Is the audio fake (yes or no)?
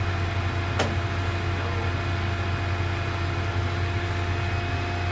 no